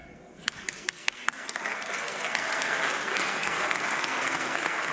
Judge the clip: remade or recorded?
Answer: remade